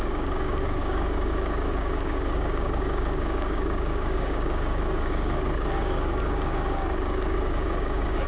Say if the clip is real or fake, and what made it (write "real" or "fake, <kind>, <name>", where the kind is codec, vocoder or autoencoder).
fake, codec, DAC